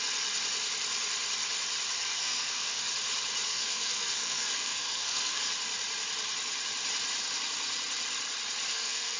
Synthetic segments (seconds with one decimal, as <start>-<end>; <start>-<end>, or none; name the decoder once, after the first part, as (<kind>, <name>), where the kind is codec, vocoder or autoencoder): 2.0-2.8 (codec, SNAC); 3.5-5.4; 8.7-9.2